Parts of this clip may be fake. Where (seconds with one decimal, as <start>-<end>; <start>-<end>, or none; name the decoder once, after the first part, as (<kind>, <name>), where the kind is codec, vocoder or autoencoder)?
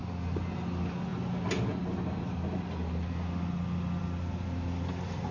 none